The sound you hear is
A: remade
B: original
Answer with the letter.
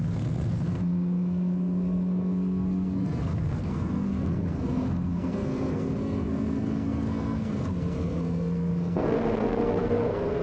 A